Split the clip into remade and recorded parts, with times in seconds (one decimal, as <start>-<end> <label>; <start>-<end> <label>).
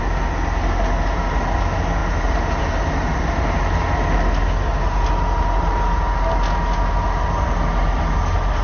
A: 0.0-8.6 recorded